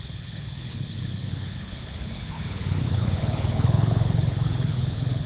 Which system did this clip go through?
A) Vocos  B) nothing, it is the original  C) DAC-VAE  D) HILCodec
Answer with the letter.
D